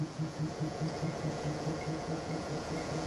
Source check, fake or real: fake